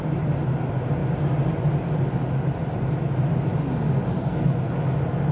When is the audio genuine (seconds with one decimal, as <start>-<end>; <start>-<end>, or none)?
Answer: 0.0-4.1; 4.7-5.3

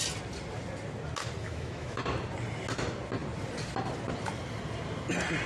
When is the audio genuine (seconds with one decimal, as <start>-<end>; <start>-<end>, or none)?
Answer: 0.0-1.4; 2.0-5.5